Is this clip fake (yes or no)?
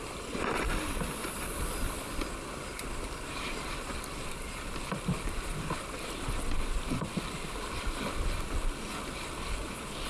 no